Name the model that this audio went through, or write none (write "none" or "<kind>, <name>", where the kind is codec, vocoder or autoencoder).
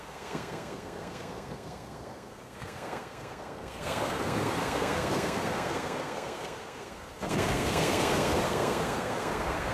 codec, SNAC